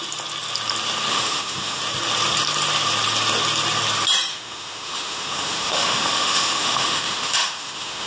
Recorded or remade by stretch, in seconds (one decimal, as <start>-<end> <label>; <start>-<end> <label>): 0.0-1.1 recorded; 1.1-1.8 remade; 1.8-4.3 recorded; 4.3-8.1 remade